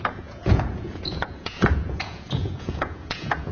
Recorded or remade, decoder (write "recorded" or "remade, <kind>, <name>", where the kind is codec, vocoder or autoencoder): remade, vocoder, Vocos